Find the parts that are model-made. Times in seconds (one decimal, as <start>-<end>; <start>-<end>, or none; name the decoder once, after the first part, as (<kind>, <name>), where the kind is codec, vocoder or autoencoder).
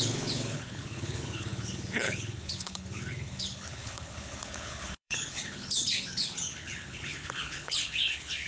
0.0-8.5 (codec, HILCodec)